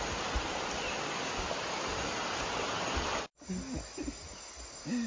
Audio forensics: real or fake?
real